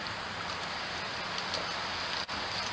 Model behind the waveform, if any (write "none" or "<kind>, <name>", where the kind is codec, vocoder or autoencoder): none